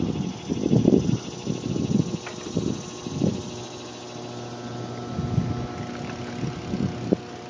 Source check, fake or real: real